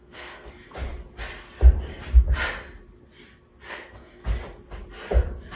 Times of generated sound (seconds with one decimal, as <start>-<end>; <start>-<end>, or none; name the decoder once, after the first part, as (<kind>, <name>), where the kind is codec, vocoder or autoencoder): 0.0-0.6 (codec, SNAC); 3.7-4.2